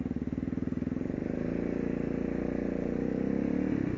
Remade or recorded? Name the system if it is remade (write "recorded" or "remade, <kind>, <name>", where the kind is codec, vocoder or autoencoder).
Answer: recorded